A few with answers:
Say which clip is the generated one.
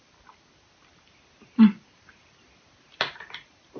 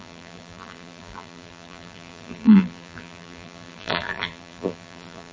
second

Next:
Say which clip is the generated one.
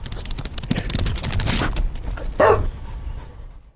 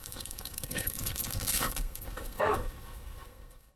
second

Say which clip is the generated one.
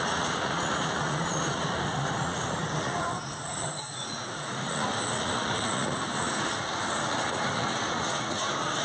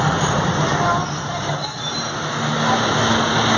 first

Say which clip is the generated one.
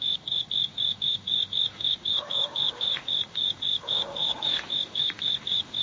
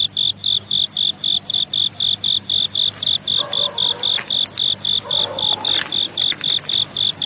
first